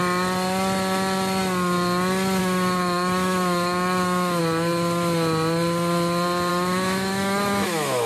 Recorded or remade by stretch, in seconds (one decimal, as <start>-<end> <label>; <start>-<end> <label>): 0.0-2.4 recorded; 2.4-4.4 remade; 4.4-6.5 recorded; 6.5-8.1 remade